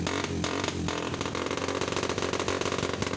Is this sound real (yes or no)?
yes